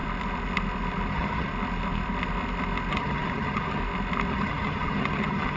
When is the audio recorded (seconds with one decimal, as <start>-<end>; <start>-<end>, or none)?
0.0-1.1; 1.5-2.9; 3.8-4.3